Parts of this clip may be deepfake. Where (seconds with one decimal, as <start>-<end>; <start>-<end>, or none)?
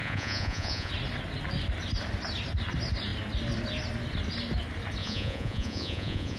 0.0-0.9; 5.0-6.4